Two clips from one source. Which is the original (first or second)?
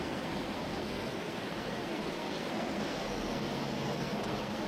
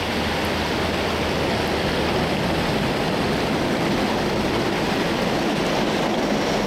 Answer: second